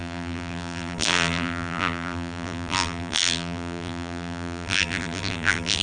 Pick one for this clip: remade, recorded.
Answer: remade